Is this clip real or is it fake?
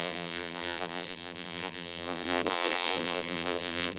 fake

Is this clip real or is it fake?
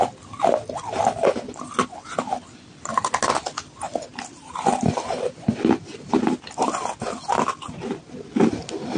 real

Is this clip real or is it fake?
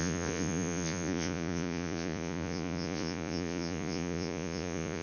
fake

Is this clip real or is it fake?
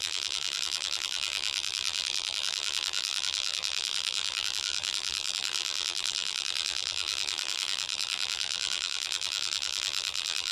fake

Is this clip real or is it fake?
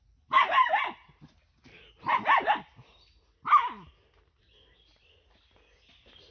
real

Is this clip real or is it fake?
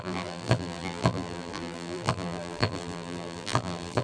fake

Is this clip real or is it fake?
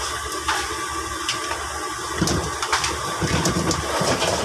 real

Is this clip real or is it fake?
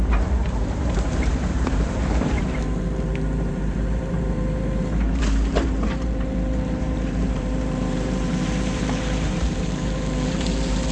fake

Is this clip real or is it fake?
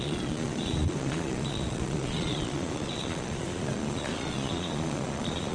fake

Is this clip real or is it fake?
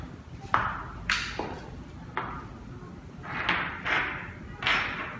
real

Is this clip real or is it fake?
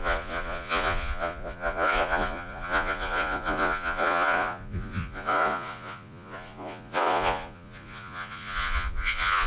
fake